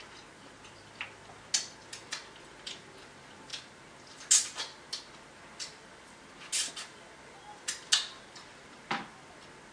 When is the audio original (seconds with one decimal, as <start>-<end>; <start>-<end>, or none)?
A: 0.0-9.7